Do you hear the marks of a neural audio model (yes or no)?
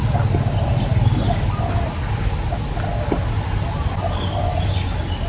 no